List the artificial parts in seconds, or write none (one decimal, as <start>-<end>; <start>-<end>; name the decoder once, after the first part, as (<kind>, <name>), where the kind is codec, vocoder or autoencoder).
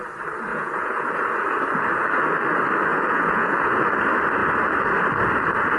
0.5-1.1 (vocoder, Vocos); 2.9-3.8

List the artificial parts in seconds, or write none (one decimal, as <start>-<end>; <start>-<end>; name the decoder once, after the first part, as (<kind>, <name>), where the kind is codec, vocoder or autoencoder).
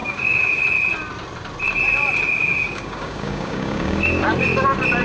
0.0-0.6 (codec, DAC); 2.3-4.2